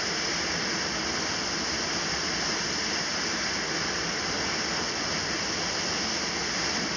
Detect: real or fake real